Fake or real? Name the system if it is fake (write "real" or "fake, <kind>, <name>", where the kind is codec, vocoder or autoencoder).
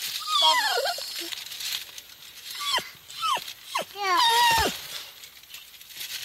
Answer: real